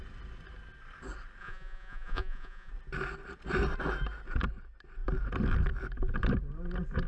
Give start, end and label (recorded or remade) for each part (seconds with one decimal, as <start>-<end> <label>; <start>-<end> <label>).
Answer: 0.0-1.4 recorded; 1.4-2.7 remade; 2.7-7.1 recorded